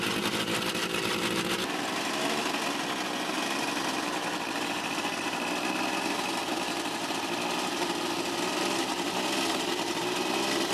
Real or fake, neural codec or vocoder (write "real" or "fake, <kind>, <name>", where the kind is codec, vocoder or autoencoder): real